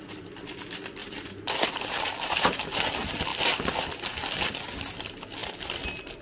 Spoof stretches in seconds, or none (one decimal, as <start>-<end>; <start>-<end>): 1.0-2.6

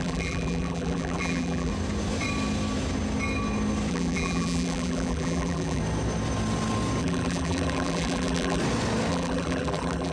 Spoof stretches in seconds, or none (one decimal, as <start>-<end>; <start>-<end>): 0.0-1.7; 3.9-5.8; 7.0-8.6; 9.1-10.1

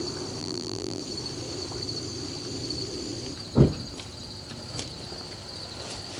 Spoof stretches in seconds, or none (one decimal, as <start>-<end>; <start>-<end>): 0.4-1.0

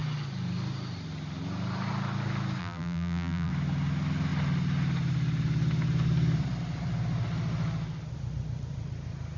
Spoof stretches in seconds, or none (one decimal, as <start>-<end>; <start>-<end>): 2.6-3.5

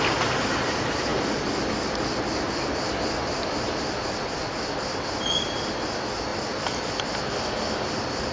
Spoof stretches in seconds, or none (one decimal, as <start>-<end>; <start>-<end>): none

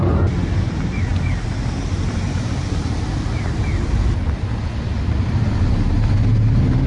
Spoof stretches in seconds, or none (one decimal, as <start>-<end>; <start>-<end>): 0.0-6.9

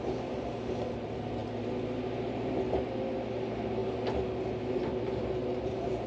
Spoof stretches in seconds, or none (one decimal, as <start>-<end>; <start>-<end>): 5.4-6.1